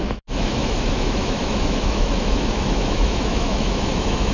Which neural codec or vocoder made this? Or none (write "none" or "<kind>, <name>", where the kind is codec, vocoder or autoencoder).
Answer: autoencoder, DAC-VAE